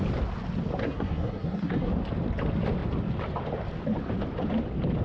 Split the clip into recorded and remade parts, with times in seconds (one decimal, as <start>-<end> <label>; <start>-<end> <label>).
0.0-0.8 recorded; 0.8-1.9 remade; 1.9-5.0 recorded